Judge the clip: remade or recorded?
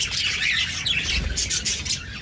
recorded